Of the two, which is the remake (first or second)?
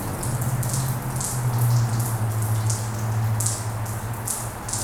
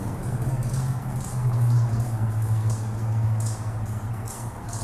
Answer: second